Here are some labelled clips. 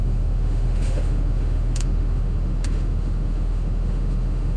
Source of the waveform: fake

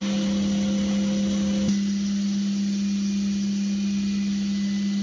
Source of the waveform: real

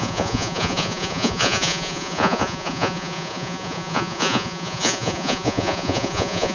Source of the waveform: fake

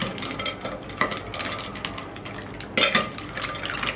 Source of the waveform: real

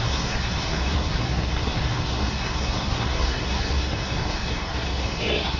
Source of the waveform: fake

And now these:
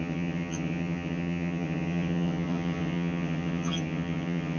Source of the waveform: fake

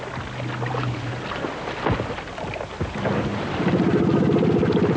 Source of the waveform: real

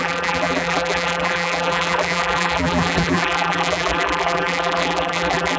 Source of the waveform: fake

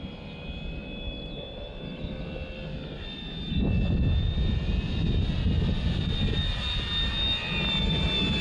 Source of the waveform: real